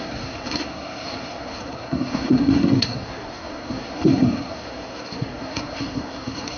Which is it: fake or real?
fake